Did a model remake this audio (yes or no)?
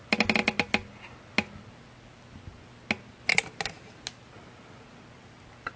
no